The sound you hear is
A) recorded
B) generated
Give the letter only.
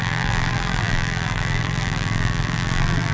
B